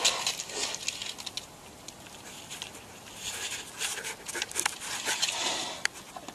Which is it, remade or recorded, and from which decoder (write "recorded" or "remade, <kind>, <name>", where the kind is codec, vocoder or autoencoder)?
recorded